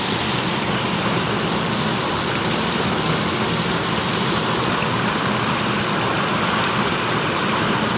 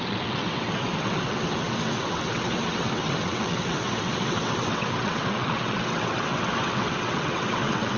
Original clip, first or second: first